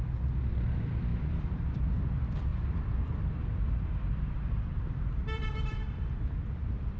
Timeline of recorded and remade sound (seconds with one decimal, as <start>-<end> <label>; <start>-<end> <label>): 0.0-1.1 recorded; 1.1-2.0 remade; 2.0-2.5 recorded; 2.5-6.6 remade; 6.6-7.0 recorded